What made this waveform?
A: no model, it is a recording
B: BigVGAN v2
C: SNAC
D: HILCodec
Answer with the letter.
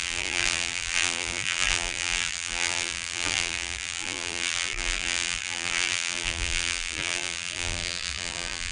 B